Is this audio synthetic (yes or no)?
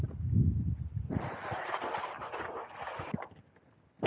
no